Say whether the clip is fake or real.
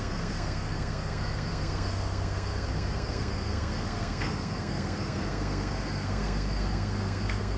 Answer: fake